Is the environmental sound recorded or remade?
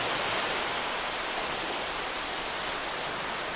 recorded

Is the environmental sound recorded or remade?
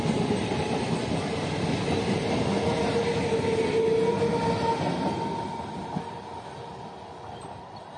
recorded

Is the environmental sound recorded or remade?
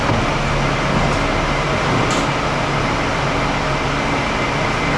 recorded